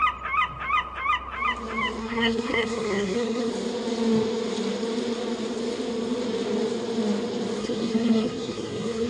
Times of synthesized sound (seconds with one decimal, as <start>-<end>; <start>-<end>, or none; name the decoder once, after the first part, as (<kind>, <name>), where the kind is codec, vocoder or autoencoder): 2.0-3.5 (codec, SNAC); 7.6-9.1